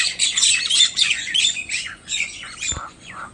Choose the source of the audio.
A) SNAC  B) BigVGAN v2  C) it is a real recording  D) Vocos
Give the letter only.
D